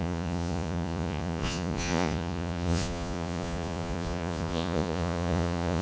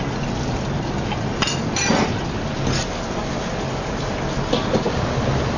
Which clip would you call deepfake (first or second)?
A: first